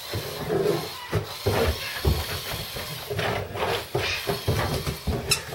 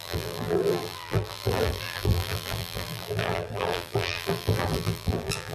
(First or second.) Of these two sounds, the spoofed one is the second